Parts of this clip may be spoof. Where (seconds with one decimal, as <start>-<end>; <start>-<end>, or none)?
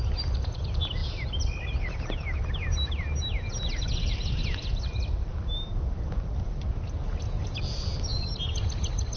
none